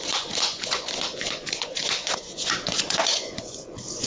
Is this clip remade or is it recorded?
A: remade